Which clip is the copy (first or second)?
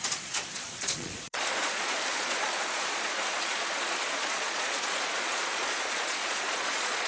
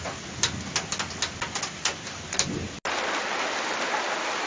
first